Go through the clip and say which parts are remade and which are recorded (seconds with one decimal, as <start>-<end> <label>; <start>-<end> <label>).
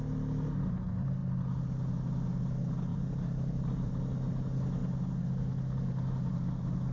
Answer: 0.0-2.9 recorded; 2.9-3.9 remade; 3.9-6.9 recorded